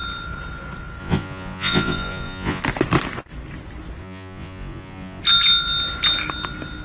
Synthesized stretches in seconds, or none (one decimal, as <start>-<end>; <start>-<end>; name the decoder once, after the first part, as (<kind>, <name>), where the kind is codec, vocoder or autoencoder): 1.0-2.6 (vocoder, Vocos); 4.0-5.2